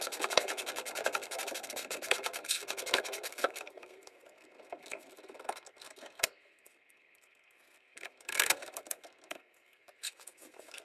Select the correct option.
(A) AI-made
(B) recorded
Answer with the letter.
A